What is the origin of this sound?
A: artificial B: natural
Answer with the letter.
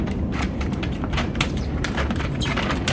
A